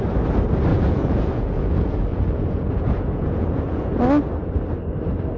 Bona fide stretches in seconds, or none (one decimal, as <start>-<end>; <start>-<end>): 0.0-0.7; 3.9-5.4

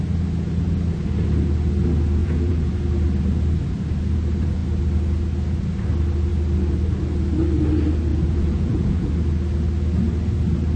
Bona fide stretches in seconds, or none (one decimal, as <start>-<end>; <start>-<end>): 0.0-2.2; 2.7-8.1; 9.1-10.8

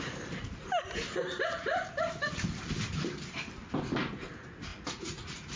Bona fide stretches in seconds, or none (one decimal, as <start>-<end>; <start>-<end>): 0.0-4.7

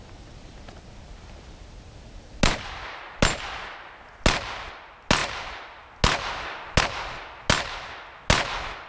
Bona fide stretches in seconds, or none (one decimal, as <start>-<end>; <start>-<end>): 0.0-8.9